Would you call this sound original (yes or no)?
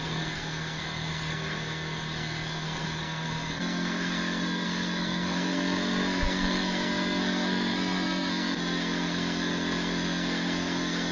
no